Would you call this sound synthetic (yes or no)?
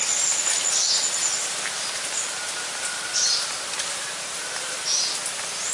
no